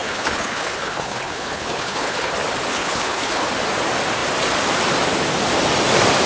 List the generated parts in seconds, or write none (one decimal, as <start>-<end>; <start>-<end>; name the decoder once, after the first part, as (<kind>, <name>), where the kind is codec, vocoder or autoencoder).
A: 0.0-2.3 (codec, HILCodec); 2.7-3.5